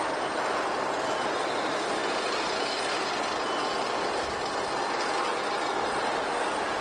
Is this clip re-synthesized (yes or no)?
no